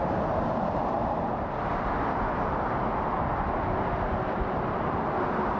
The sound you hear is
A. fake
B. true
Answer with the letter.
B